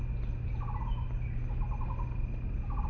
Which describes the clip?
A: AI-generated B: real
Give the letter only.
B